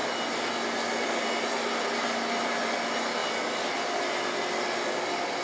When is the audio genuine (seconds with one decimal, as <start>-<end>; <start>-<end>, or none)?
0.0-5.4